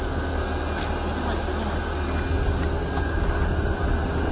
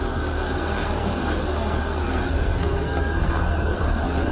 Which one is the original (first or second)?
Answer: first